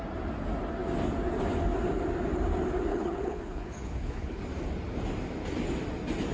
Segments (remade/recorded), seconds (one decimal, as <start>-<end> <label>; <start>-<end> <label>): 0.0-2.9 recorded; 2.9-4.4 remade; 4.4-6.3 recorded